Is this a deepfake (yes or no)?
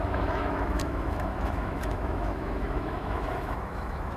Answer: yes